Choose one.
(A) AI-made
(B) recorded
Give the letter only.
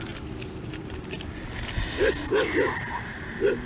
B